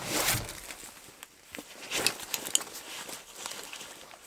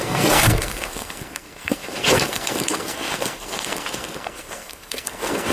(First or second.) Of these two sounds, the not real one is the second